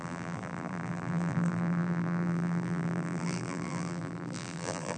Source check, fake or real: fake